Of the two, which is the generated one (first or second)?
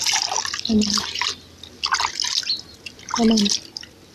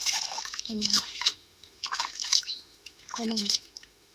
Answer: second